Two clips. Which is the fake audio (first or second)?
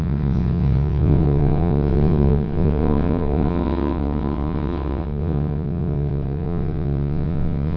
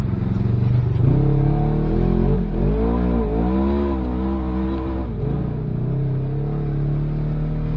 first